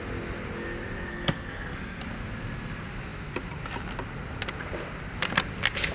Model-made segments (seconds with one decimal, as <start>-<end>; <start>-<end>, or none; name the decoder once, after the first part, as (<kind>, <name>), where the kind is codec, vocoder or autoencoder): 1.1-2.0 (codec, SNAC)